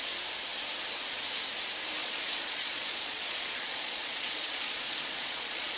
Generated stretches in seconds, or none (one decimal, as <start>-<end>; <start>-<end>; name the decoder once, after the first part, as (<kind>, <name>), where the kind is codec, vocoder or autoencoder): 2.0-5.8 (vocoder, Vocos)